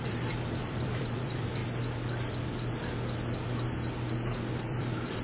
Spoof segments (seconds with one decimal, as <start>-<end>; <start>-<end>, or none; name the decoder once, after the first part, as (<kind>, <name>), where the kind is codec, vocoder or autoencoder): 0.0-1.6 (vocoder, BigVGAN v2); 4.7-5.2